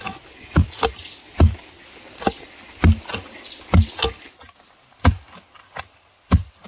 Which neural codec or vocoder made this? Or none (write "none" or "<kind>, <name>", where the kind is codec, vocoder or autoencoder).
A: none